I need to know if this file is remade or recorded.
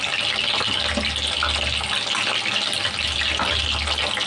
recorded